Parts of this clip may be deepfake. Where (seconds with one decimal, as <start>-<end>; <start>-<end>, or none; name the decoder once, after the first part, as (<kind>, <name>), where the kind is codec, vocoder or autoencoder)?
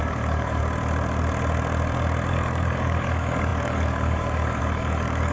0.0-0.6 (codec, DAC); 2.3-5.3